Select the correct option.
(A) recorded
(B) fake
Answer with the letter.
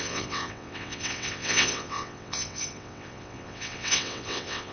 B